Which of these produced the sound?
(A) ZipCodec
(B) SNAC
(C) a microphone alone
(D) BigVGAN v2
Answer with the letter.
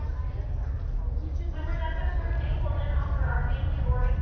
C